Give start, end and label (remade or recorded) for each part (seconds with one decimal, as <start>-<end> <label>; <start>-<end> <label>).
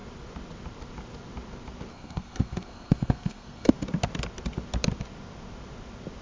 0.0-1.9 recorded; 1.9-3.7 remade; 3.7-6.2 recorded